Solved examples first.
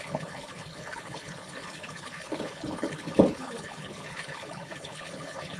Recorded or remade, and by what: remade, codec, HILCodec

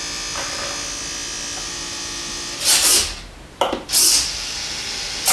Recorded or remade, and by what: recorded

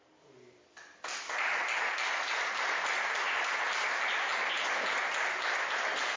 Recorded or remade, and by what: recorded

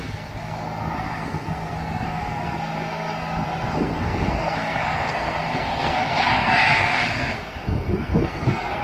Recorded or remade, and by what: remade, codec, SNAC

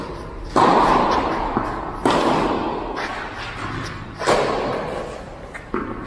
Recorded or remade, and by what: recorded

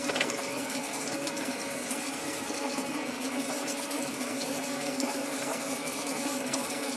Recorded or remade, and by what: remade, codec, SNAC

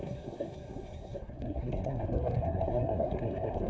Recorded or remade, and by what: remade, codec, SNAC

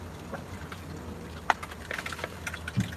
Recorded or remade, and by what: recorded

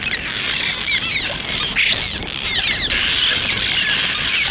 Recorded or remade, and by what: recorded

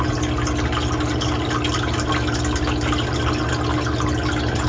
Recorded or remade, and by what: recorded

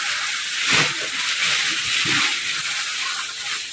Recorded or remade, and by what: recorded